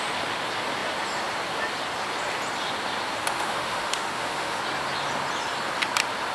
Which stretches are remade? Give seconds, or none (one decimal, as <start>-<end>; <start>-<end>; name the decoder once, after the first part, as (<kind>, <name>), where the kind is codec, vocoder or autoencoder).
3.3-4.6 (autoencoder, DAC-VAE)